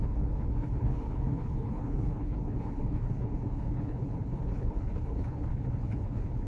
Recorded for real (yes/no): no